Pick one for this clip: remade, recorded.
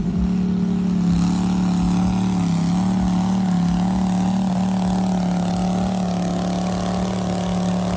recorded